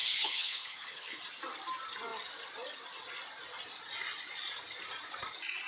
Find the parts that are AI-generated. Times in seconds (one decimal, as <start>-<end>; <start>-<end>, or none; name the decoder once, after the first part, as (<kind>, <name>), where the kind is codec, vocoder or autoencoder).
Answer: 0.0-1.2 (codec, HILCodec)